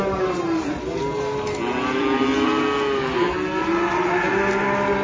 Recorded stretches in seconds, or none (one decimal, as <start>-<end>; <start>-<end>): 0.0-5.0